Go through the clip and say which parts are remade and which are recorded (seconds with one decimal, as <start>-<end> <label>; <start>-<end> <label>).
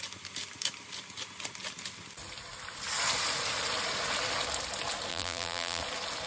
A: 0.0-5.1 recorded; 5.1-5.8 remade; 5.8-6.3 recorded